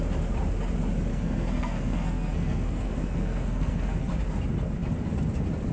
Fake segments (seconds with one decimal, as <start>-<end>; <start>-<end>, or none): 1.1-4.1